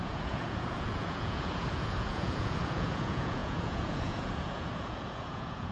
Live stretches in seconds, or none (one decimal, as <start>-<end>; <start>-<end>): none